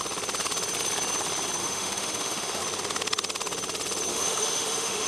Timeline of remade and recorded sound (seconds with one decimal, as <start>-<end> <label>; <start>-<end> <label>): 0.0-1.6 recorded; 1.6-2.6 remade; 2.6-4.1 recorded; 4.1-5.1 remade